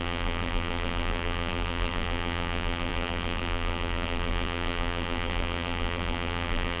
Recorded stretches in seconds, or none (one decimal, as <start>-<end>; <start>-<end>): none